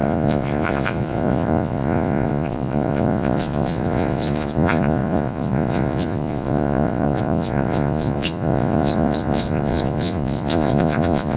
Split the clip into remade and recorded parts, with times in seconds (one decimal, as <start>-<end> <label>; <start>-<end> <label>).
0.0-11.4 remade